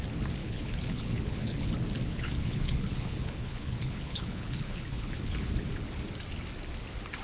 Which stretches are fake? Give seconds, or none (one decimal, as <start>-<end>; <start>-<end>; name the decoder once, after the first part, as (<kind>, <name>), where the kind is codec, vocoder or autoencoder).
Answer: 0.4-1.7 (codec, HILCodec); 2.1-5.5

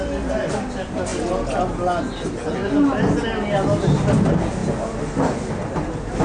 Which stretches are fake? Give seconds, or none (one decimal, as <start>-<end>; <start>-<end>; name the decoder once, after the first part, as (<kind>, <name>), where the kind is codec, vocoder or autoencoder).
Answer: none

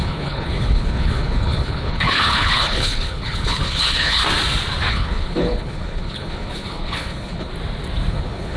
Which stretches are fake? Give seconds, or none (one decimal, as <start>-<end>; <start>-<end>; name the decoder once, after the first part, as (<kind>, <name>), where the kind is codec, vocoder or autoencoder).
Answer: 0.0-4.2 (codec, HILCodec); 4.9-7.5; 8.1-8.6

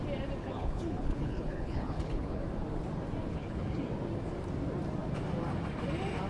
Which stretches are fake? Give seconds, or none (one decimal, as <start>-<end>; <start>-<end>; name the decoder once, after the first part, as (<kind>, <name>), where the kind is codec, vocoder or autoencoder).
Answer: 0.4-2.4 (codec, HILCodec); 3.2-3.8

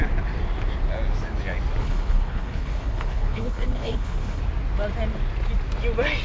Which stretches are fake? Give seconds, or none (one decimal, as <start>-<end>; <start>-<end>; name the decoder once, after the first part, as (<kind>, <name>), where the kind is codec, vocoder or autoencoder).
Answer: 1.8-4.4 (codec, HILCodec)

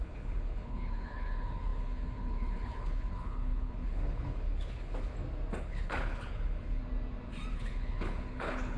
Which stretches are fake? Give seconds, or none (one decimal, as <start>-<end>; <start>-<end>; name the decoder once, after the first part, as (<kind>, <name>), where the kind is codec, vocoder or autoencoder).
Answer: 0.0-5.1 (codec, HILCodec); 5.6-6.8; 7.5-8.8

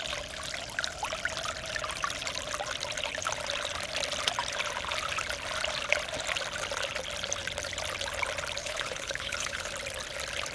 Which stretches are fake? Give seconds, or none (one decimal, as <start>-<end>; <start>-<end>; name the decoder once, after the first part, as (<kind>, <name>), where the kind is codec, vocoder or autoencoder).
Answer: 8.6-9.7 (codec, HILCodec)

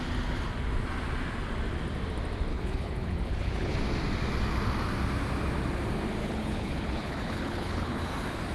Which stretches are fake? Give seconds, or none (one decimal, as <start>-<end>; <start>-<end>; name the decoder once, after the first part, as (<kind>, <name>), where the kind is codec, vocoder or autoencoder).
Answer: 2.5-3.8 (codec, HILCodec); 6.2-8.0